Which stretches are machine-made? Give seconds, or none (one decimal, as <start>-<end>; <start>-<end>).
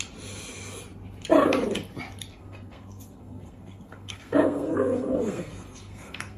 2.3-6.4